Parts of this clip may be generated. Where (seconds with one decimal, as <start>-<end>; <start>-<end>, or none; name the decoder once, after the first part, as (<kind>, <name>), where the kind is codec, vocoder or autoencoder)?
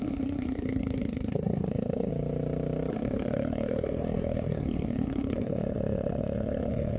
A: 0.0-2.1 (codec, SNAC); 2.9-7.0